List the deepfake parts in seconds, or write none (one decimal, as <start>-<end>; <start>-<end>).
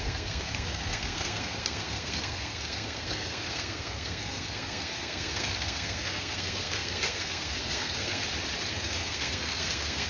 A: 0.0-8.2; 8.7-10.1